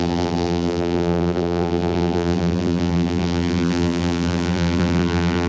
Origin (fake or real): fake